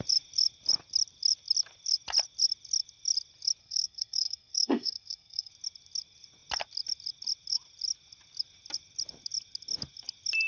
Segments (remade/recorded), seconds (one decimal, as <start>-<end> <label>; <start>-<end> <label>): 0.0-3.6 recorded; 3.6-5.5 remade; 5.5-10.5 recorded